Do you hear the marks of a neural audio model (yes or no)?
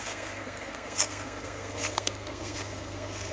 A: yes